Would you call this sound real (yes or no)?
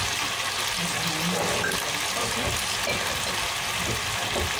yes